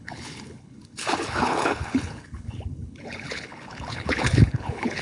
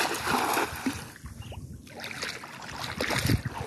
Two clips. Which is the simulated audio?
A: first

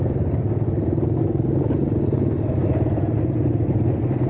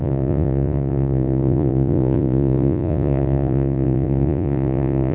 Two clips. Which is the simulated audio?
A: second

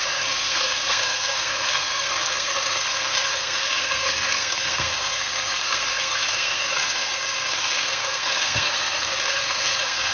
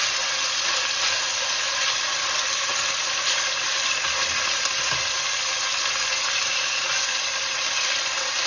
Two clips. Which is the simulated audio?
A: first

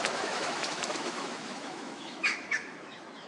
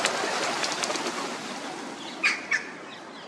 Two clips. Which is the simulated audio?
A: first